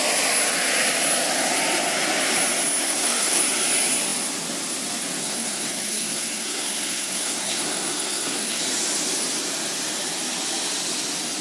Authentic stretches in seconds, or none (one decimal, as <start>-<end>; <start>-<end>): 0.0-2.8; 3.4-5.2; 8.6-11.4